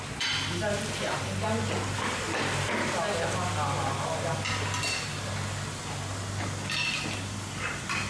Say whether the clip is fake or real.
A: real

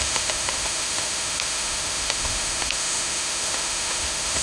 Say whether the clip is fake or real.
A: fake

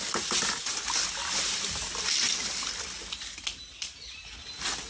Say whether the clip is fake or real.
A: real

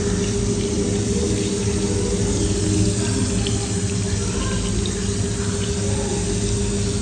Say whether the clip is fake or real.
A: real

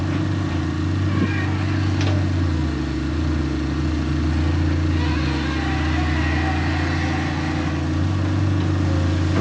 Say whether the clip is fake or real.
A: real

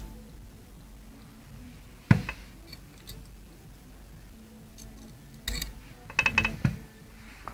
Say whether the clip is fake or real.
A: real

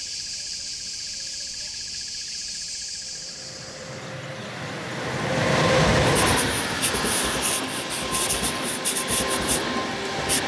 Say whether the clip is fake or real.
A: real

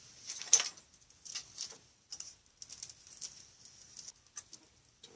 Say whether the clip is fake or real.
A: real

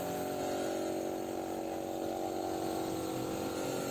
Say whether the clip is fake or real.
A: real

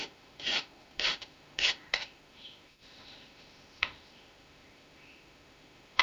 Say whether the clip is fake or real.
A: fake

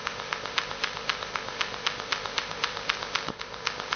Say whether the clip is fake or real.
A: fake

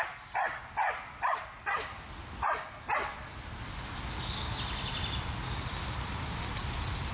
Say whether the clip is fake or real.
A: real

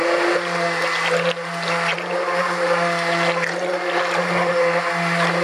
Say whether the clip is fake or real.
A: real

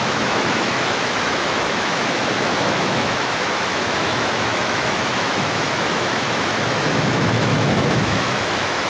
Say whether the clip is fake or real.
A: fake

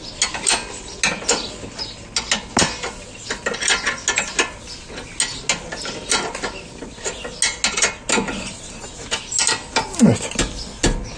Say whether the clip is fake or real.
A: real